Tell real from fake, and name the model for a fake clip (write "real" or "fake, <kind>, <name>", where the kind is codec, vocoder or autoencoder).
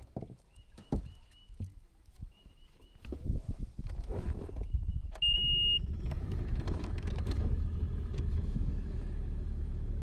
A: fake, autoencoder, DAC-VAE